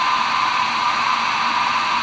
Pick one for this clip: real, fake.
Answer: real